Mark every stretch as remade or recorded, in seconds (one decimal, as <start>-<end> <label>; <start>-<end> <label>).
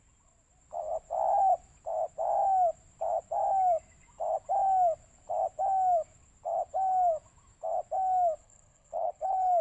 0.0-8.4 recorded; 8.4-9.6 remade